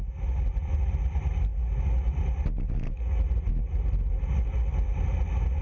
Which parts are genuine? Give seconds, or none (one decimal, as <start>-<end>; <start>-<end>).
0.0-5.6